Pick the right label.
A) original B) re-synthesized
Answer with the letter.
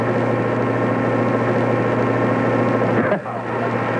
A